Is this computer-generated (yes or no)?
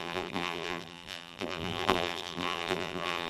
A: yes